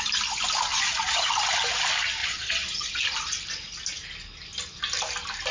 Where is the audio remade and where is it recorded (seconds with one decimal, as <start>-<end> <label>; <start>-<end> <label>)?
0.0-0.7 recorded; 0.7-1.3 remade; 1.3-2.2 recorded; 2.2-3.0 remade; 3.0-5.5 recorded